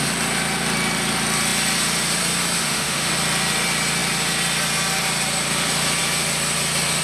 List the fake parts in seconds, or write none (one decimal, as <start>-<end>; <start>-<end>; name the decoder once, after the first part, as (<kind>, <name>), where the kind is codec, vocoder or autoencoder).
2.6-3.1 (autoencoder, DAC-VAE)